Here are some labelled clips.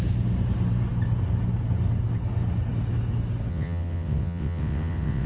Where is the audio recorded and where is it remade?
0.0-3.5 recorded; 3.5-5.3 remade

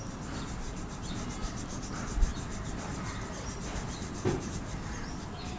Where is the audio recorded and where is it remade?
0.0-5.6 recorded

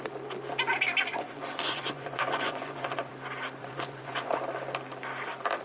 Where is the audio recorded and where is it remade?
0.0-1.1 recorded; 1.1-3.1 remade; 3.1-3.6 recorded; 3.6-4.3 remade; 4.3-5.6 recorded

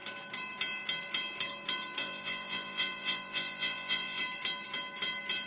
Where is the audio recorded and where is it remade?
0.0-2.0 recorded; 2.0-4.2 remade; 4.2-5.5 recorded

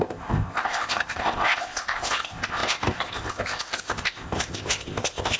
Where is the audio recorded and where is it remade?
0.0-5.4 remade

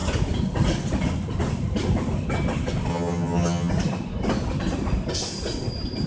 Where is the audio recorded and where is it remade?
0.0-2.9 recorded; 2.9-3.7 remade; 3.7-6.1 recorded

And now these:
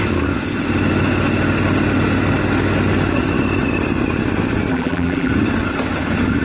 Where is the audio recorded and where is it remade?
0.0-4.7 recorded; 4.7-5.3 remade; 5.3-6.4 recorded